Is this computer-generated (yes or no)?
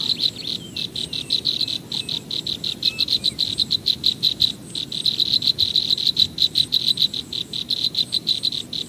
no